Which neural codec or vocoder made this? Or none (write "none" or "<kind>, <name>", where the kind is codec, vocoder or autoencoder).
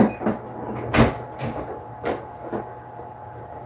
none